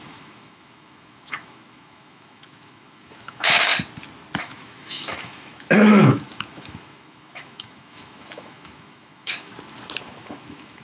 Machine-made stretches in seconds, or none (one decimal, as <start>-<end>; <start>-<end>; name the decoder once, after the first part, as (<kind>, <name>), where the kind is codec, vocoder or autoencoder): 0.0-3.7 (autoencoder, DAC-VAE); 4.4-9.5; 10.1-10.8